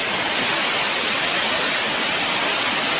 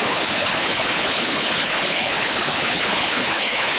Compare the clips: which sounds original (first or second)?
first